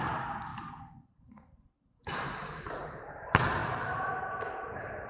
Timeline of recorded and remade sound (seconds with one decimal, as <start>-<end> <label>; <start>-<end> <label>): 0.0-0.5 recorded; 0.5-3.1 remade; 3.1-3.6 recorded; 3.6-4.2 remade; 4.2-5.1 recorded